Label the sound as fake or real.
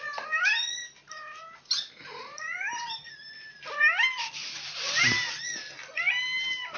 real